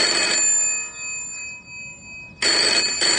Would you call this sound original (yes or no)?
yes